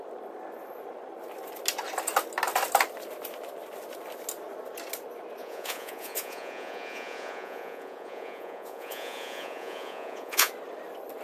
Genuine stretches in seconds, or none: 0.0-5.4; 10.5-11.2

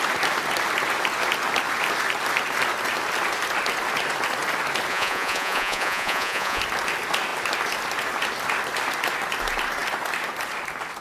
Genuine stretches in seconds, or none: 0.0-4.9; 6.6-11.0

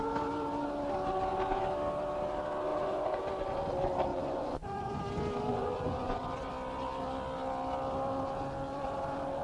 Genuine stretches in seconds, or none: 0.0-2.7; 3.2-4.1; 5.0-5.5; 6.2-9.4

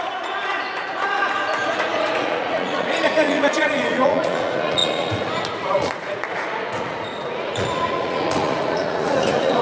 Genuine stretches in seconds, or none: none